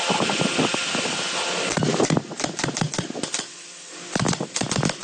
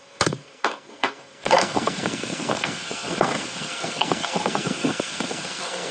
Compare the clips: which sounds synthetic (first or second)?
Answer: second